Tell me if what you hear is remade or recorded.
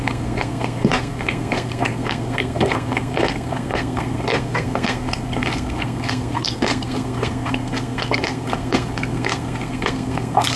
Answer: remade